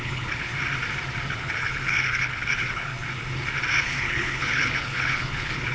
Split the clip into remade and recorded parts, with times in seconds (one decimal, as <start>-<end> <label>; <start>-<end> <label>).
0.0-0.5 remade; 0.5-1.3 recorded; 1.3-2.9 remade; 2.9-3.8 recorded; 3.8-5.7 remade

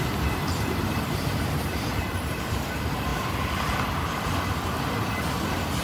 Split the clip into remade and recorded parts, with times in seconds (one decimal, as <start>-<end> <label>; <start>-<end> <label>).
0.0-3.1 remade; 3.1-5.8 recorded

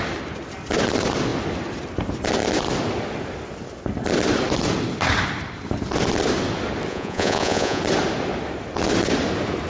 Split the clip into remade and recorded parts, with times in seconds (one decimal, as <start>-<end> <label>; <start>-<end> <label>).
0.0-6.9 recorded; 6.9-7.8 remade; 7.8-9.7 recorded

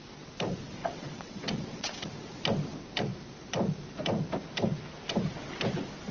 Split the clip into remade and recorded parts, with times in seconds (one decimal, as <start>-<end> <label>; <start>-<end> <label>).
0.0-0.8 recorded; 0.8-2.1 remade; 2.1-6.1 recorded

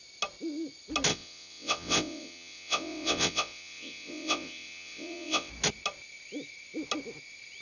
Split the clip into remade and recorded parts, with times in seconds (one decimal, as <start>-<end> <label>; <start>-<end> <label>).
0.0-1.1 recorded; 1.1-5.5 remade; 5.5-7.6 recorded

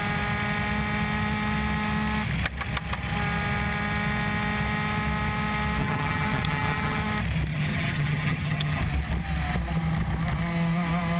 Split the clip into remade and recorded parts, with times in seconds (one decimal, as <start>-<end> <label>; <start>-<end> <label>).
0.0-5.8 recorded; 5.8-7.0 remade; 7.0-7.5 recorded; 7.5-8.8 remade; 8.8-11.2 recorded